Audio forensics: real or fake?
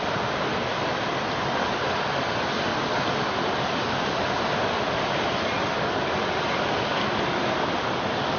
real